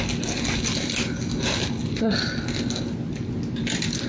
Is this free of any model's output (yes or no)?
yes